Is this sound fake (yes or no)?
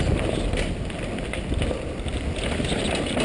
no